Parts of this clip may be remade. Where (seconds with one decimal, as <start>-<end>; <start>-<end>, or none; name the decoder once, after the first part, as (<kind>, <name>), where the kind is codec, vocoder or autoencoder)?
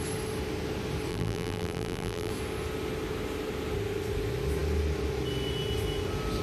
1.1-2.3 (vocoder, BigVGAN v2)